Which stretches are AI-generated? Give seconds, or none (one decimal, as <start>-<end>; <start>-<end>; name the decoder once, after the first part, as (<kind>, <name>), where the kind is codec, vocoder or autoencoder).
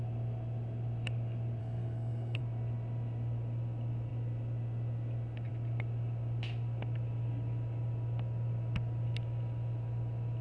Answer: 1.6-2.4 (codec, SNAC)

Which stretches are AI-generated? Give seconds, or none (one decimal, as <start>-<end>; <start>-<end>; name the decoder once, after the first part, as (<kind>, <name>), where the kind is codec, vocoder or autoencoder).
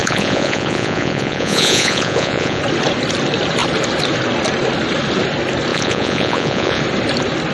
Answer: 0.0-2.6 (vocoder, Vocos); 5.7-6.8